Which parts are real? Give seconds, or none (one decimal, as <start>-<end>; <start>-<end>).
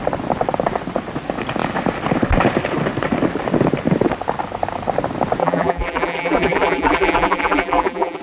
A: 0.0-5.4